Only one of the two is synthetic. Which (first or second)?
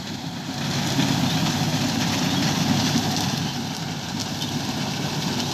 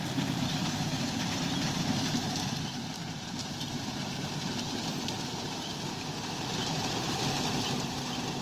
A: second